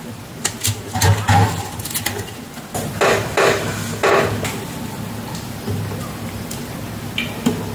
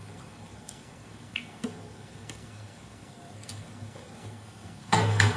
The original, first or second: first